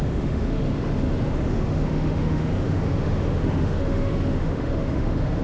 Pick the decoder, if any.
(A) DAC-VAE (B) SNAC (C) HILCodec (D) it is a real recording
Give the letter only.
A